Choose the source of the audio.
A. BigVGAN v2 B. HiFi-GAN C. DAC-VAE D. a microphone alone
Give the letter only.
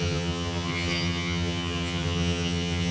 B